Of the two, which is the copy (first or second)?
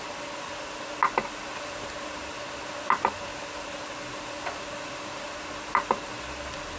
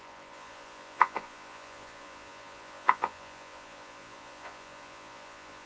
second